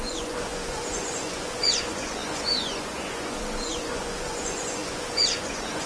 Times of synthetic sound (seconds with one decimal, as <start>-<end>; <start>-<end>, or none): 0.0-5.9